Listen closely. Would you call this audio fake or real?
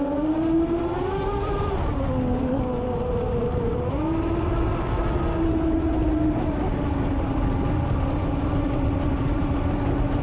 real